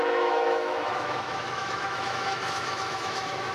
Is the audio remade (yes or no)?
yes